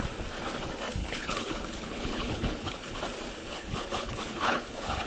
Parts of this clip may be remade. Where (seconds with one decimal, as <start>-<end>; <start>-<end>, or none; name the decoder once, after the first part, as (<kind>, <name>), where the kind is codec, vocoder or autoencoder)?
1.0-3.0 (codec, HILCodec); 3.4-5.1